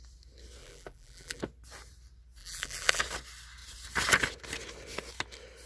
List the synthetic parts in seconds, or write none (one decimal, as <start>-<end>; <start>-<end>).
0.6-1.4; 2.4-3.0